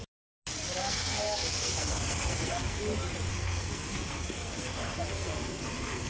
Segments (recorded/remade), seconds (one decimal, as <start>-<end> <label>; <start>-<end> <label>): 0.0-0.8 recorded; 0.8-2.8 remade; 2.8-3.3 recorded; 3.3-6.1 remade